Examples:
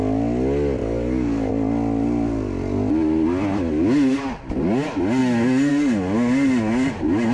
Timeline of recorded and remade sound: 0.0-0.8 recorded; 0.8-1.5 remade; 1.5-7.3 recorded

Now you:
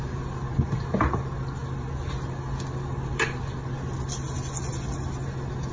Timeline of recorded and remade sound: 0.0-5.7 recorded

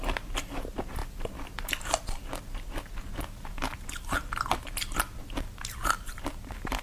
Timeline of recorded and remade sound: 0.0-6.8 recorded

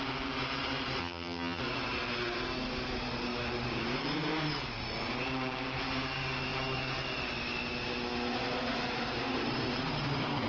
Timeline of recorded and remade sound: 0.0-1.0 recorded; 1.0-1.6 remade; 1.6-10.5 recorded

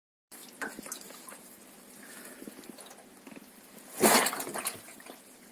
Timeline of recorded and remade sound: 0.0-5.5 recorded

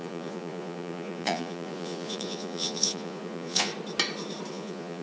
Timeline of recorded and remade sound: 0.0-3.7 remade; 3.7-4.5 recorded; 4.5-5.0 remade

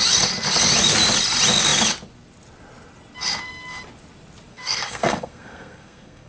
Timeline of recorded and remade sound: 0.0-4.5 recorded; 4.5-6.3 remade

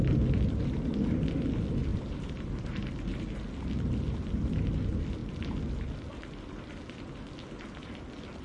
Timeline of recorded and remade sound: 0.0-1.9 recorded; 1.9-2.9 remade; 2.9-8.4 recorded